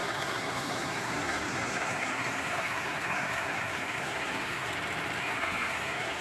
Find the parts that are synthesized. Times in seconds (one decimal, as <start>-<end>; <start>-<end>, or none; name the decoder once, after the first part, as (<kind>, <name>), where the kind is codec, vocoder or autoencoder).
0.0-4.7 (codec, SNAC); 5.2-6.2